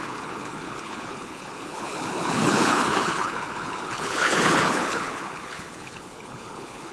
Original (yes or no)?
no